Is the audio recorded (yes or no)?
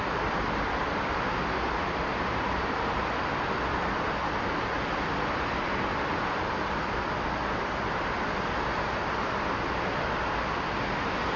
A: yes